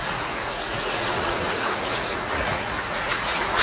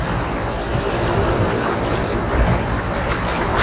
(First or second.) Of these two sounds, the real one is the second